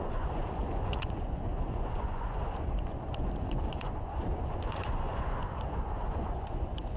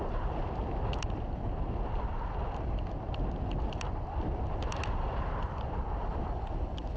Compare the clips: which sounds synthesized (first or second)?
first